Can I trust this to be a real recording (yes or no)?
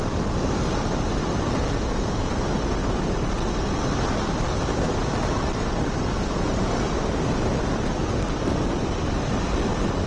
yes